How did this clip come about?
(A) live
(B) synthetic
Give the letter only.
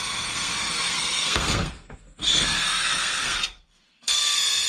B